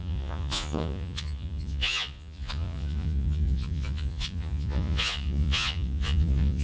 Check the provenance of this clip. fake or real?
fake